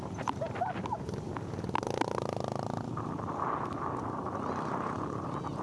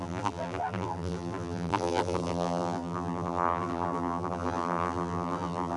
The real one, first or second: first